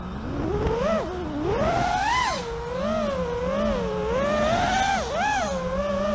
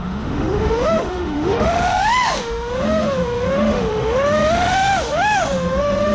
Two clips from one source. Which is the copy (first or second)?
second